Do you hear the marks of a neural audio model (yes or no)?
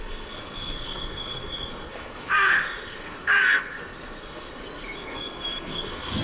yes